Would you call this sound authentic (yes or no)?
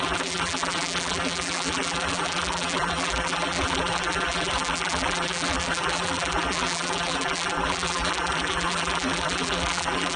no